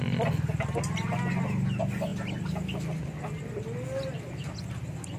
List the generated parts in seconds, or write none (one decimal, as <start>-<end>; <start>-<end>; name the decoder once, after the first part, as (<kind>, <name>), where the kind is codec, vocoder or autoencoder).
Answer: none